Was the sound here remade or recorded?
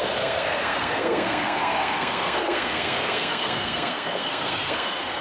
remade